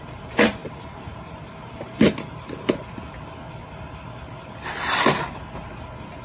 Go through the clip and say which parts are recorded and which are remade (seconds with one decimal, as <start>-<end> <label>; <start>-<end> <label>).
0.0-0.6 recorded; 0.6-2.7 remade; 2.7-6.2 recorded